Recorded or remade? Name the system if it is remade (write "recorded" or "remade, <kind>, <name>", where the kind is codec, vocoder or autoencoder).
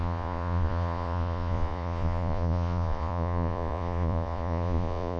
remade, vocoder, Vocos